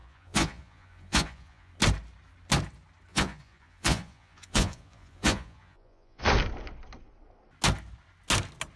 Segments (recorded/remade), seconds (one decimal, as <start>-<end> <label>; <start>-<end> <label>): 0.0-1.7 remade; 1.7-3.1 recorded; 3.1-6.3 remade; 6.3-8.8 recorded